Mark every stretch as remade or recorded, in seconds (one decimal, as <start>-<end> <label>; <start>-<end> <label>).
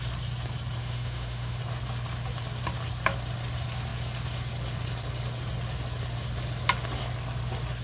0.0-0.8 recorded; 0.8-1.6 remade; 1.6-7.8 recorded